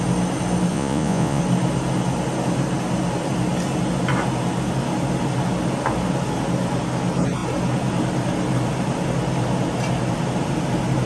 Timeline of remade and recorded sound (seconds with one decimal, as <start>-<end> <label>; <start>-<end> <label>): 0.0-0.7 recorded; 0.7-1.4 remade; 1.4-11.1 recorded